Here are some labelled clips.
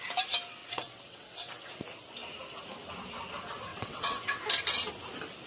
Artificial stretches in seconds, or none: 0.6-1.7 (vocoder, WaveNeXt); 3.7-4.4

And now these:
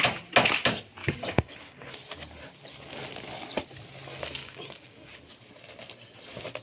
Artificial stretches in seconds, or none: 1.0-1.9 (codec, DAC); 4.4-5.2

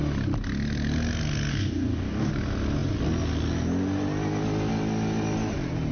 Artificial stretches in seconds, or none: 1.5-2.3 (codec, DAC)

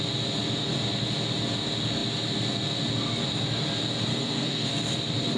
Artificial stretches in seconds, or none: 4.1-4.7 (codec, SNAC)

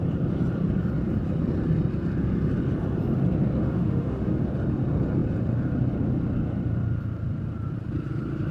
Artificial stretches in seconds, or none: 3.6-4.4 (autoencoder, DAC-VAE)

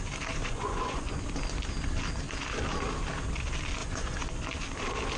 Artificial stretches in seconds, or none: 0.4-1.2 (vocoder, Vocos); 3.8-4.3

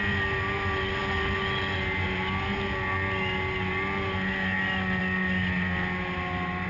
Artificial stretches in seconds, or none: none

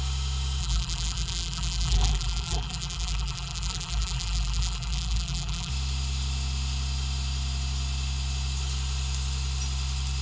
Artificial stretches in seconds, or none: 0.6-5.7 (vocoder, BigVGAN v2)